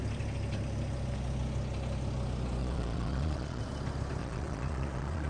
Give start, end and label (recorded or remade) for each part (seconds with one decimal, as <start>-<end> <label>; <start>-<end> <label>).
0.0-2.6 recorded; 2.6-3.6 remade; 3.6-4.2 recorded; 4.2-5.3 remade